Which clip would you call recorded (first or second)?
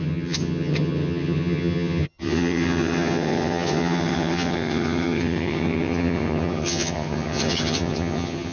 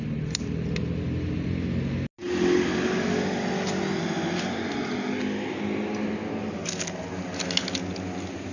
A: second